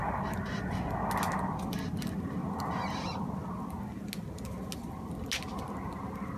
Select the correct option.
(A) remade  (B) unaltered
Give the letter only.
B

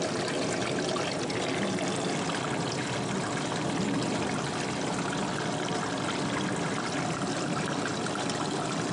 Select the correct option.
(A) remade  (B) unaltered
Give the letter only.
B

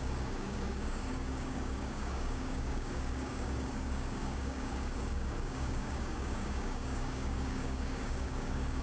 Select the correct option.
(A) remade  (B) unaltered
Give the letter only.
A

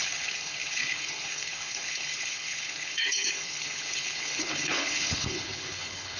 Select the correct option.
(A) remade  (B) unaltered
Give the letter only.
A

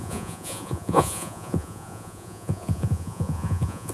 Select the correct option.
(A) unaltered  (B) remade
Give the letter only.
B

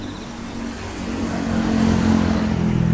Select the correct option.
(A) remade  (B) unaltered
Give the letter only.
B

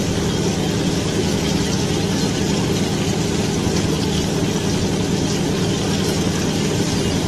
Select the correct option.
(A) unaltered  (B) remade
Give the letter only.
A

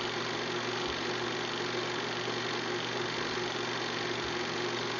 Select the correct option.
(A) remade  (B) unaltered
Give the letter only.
B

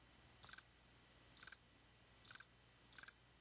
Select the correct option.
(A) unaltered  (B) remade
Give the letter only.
A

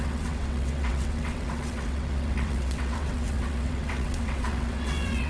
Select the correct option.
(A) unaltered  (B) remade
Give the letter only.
B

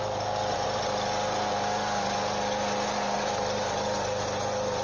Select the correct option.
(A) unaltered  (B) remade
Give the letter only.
A